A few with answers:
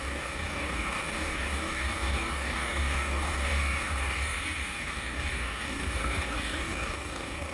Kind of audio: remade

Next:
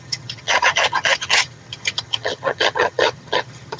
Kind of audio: remade